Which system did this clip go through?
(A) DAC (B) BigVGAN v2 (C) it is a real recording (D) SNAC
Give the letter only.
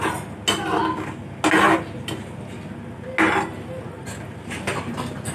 C